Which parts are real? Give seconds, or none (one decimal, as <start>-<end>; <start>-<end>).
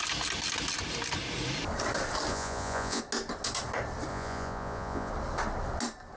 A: 0.0-2.3; 3.0-4.1; 5.1-6.2